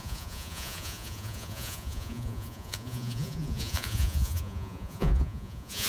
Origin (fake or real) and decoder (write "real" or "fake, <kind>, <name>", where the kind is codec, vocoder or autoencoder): fake, vocoder, Vocos